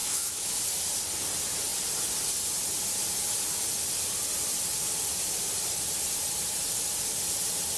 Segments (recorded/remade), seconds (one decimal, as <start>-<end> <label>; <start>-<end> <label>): 0.0-0.6 remade; 0.6-7.8 recorded